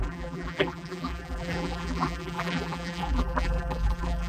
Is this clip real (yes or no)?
no